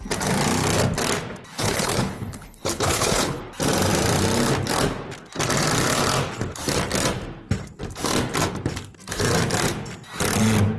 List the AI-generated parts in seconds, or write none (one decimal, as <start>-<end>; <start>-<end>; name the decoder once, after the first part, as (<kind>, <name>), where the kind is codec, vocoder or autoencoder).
1.5-3.4 (codec, HILCodec)